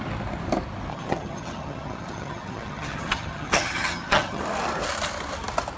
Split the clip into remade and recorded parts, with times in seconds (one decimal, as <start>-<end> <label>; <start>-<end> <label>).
0.0-0.9 recorded; 0.9-4.4 remade; 4.4-5.8 recorded